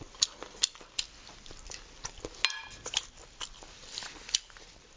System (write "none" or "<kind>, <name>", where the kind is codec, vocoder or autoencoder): none